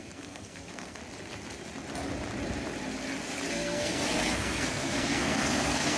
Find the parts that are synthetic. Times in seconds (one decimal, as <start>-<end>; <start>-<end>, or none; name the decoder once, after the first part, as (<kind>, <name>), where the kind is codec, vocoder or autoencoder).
0.0-1.0 (codec, SNAC); 3.5-6.0